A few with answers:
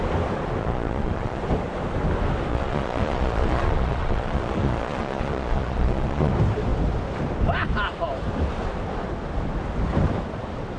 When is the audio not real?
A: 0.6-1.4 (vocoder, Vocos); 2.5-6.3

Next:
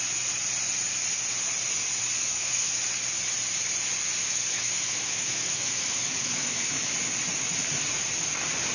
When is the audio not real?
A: 2.2-2.8 (autoencoder, DAC-VAE); 4.2-6.9

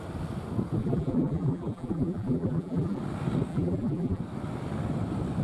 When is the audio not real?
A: 0.8-3.0 (vocoder, BigVGAN v2); 3.5-4.2